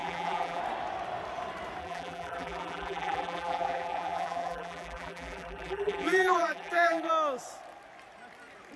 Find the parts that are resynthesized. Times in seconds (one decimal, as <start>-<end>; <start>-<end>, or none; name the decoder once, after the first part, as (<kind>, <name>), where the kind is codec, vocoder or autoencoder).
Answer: 0.0-0.6 (vocoder, BigVGAN v2); 1.8-7.1